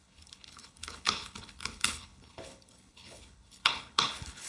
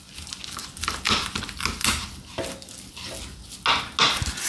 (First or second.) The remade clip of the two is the first